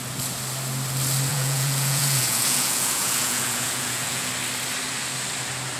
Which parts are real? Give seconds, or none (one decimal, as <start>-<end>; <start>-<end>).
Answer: 0.0-1.3; 4.3-5.8